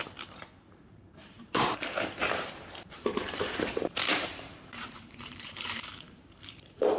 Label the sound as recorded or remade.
remade